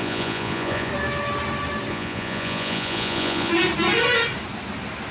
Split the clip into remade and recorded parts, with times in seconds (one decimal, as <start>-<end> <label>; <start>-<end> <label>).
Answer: 0.0-0.9 remade; 0.9-1.9 recorded; 1.9-3.5 remade; 3.5-5.1 recorded